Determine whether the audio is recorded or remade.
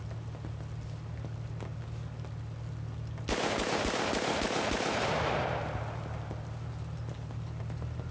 recorded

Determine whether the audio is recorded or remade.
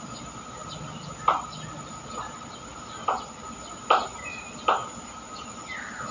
recorded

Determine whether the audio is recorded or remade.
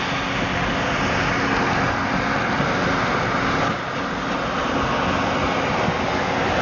recorded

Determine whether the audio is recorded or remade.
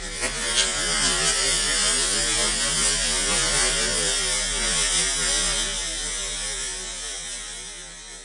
recorded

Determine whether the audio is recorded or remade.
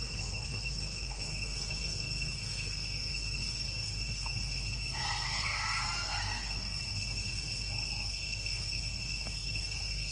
remade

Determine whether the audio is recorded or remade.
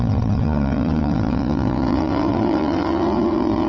remade